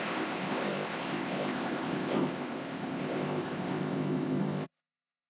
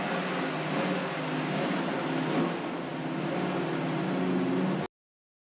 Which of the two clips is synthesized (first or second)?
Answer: first